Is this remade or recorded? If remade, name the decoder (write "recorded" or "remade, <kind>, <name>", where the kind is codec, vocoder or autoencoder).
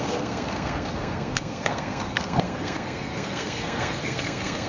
remade, codec, SNAC